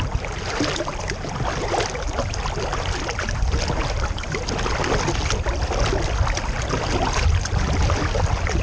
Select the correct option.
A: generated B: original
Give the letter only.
B